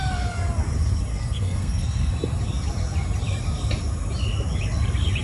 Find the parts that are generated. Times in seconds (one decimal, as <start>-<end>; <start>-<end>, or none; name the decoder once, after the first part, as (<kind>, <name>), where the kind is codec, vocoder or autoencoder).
1.1-2.1 (codec, SNAC)